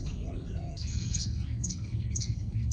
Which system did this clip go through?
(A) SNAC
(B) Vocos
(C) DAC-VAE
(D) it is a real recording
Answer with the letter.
A